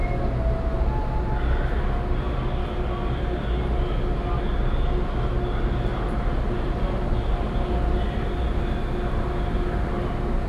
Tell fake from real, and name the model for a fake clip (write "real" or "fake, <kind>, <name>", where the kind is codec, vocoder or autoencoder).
real